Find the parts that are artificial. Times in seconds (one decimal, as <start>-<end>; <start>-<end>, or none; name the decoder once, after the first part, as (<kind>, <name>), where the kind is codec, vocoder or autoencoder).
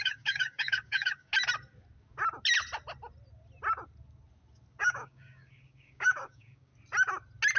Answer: 0.0-1.3 (codec, DAC); 4.8-6.7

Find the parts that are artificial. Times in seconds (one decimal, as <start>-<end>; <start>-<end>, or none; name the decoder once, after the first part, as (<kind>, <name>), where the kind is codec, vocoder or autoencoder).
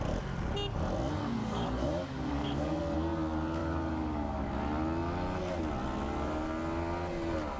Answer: 1.4-2.8 (codec, DAC); 3.6-4.5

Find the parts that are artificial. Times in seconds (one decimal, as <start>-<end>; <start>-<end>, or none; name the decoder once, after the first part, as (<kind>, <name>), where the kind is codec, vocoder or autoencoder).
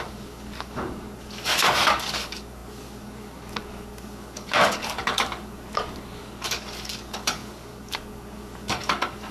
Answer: 0.0-9.3 (codec, DAC)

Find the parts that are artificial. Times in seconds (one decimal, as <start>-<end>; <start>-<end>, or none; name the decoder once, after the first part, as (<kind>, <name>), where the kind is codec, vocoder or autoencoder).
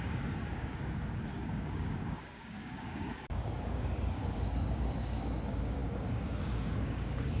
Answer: 0.0-7.4 (codec, DAC)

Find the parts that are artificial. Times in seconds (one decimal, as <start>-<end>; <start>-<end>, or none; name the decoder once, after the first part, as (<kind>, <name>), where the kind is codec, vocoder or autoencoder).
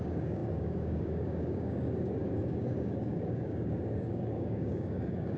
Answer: 0.0-5.4 (codec, DAC)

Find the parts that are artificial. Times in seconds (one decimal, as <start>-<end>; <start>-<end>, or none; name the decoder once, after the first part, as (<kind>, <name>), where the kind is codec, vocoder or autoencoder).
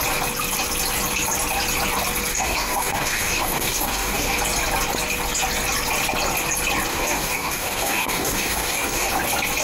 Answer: 2.3-4.4 (codec, DAC); 6.9-9.1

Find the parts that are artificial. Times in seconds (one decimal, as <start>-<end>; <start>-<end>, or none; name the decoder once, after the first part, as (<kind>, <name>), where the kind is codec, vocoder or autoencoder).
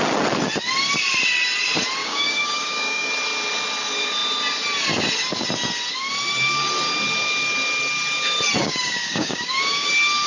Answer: 2.0-3.1 (codec, DAC); 8.6-9.9